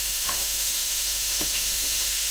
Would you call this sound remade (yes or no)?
yes